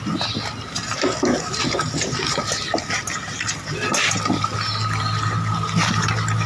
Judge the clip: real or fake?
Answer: real